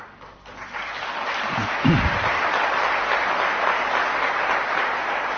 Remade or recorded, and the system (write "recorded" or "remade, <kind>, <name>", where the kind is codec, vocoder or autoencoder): recorded